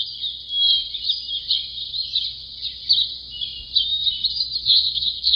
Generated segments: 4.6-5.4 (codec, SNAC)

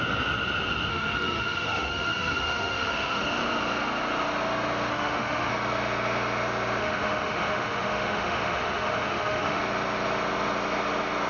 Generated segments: 0.9-3.2 (autoencoder, DAC-VAE); 4.9-5.5; 6.8-9.6